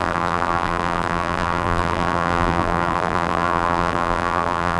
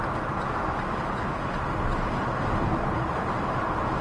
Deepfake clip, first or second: first